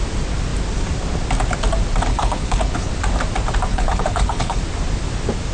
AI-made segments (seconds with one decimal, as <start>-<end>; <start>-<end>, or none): 2.1-2.9; 3.7-4.6